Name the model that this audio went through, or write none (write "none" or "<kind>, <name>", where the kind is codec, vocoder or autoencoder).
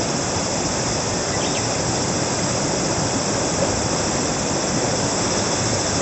none